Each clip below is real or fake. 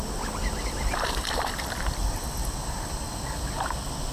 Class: real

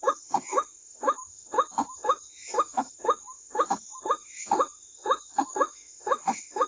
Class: fake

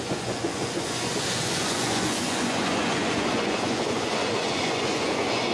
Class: fake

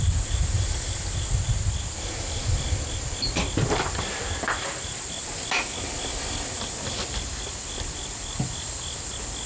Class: real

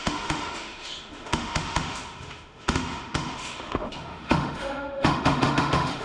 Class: fake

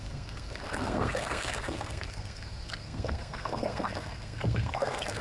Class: fake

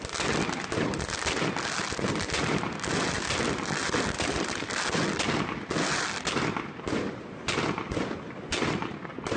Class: real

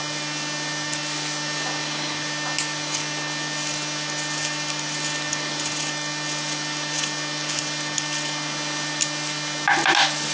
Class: real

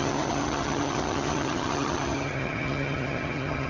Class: fake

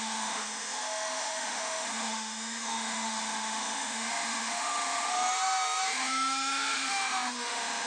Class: fake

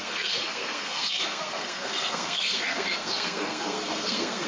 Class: fake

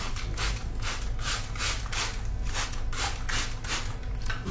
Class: real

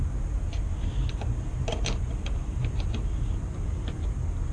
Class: real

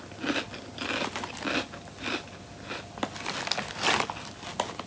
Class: real